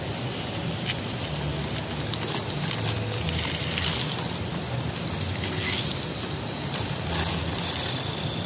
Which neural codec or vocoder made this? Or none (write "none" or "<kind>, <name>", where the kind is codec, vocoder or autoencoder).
none